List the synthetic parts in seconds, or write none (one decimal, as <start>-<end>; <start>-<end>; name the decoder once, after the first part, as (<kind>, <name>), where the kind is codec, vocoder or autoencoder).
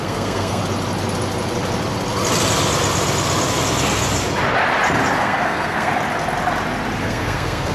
0.0-0.6 (codec, SNAC); 5.2-5.9; 7.0-7.7